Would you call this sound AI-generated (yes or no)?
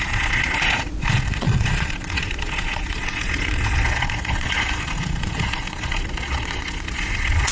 yes